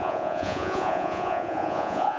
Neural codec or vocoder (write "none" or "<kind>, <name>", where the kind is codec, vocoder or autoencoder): vocoder, Vocos